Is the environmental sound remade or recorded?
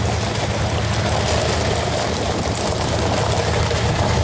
recorded